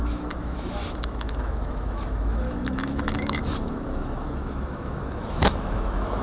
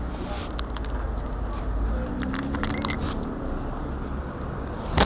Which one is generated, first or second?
first